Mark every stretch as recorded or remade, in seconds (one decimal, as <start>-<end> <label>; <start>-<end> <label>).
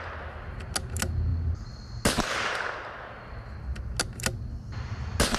0.0-5.4 recorded